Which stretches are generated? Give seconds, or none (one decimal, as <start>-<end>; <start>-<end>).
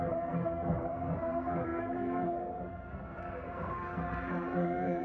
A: 0.0-5.0